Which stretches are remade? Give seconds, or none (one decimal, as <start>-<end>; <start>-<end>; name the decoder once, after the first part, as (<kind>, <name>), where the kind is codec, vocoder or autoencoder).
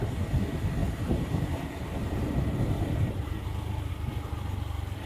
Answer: none